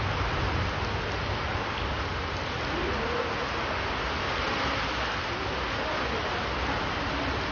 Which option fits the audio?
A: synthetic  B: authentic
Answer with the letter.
B